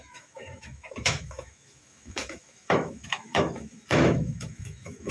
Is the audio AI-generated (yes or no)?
yes